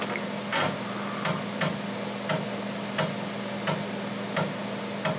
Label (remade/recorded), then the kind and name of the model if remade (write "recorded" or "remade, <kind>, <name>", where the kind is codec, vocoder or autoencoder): recorded